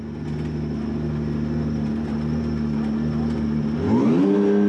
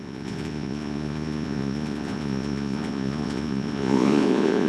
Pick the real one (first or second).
first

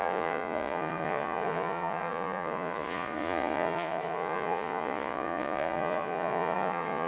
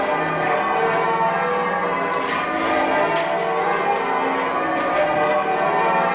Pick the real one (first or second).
second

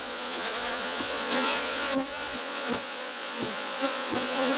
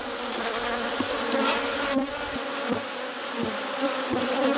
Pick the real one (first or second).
second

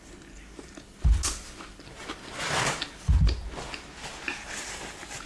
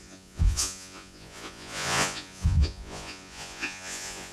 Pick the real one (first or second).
first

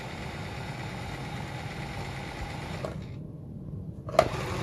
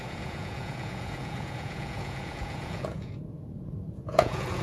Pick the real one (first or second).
first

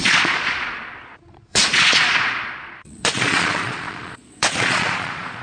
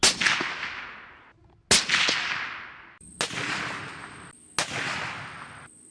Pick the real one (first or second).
second